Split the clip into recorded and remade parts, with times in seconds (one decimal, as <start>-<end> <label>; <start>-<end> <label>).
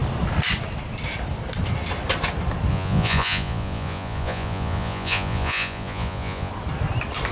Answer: 0.0-2.7 recorded; 2.7-6.5 remade; 6.5-7.3 recorded